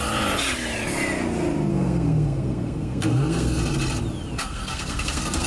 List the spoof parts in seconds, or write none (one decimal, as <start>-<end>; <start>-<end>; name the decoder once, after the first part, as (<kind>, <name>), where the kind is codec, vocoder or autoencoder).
1.7-3.6 (codec, SNAC); 4.4-5.5